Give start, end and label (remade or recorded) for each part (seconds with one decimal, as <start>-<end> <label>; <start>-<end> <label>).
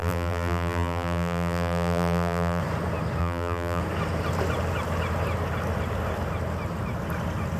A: 0.0-2.6 remade; 2.6-3.2 recorded; 3.2-3.8 remade; 3.8-7.6 recorded